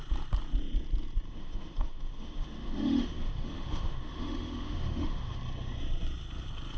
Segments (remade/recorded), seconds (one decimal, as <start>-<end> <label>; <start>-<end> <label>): 0.0-1.3 recorded; 1.3-5.4 remade; 5.4-6.8 recorded